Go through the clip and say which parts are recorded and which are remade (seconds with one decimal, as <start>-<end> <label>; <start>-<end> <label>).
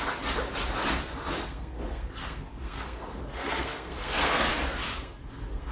0.0-1.4 recorded; 1.4-4.5 remade; 4.5-4.9 recorded; 4.9-5.7 remade